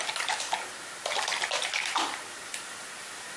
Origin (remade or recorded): recorded